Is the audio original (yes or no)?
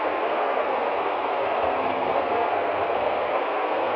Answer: no